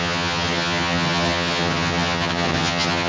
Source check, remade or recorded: remade